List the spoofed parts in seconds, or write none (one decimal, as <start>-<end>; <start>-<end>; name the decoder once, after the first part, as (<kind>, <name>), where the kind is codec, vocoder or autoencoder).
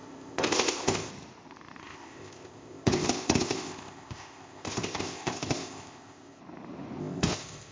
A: 0.0-1.1 (codec, ZipCodec); 1.8-6.4; 7.0-7.7